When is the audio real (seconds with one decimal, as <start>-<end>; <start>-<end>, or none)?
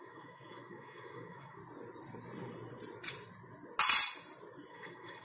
1.6-4.7